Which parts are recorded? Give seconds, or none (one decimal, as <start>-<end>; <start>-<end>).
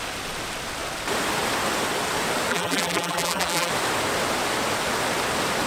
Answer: 0.0-2.5; 3.7-5.7